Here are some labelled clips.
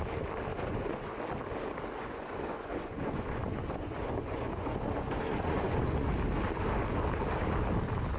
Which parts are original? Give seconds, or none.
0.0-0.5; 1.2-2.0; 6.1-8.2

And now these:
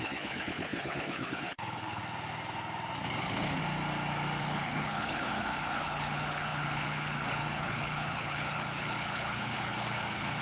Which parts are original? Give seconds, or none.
2.0-3.2; 3.6-4.4

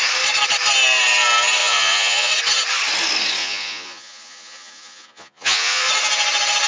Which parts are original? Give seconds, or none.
0.0-1.6; 2.3-3.4; 5.9-6.7

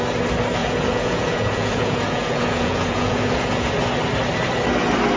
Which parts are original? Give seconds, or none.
0.0-0.6; 3.7-5.2

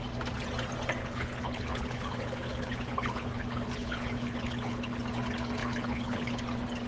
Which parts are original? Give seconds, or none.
0.0-1.0; 5.0-5.6; 6.4-6.9

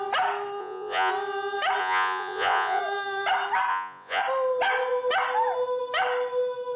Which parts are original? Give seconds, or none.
0.0-0.6; 1.1-1.8; 2.8-3.7; 4.2-6.8

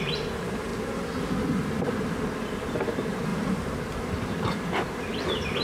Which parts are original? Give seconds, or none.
0.7-1.8

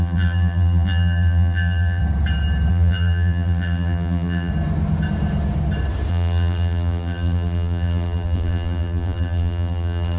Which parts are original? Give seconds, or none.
2.0-2.7; 4.5-6.1